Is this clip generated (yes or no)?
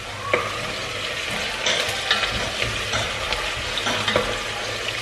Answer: no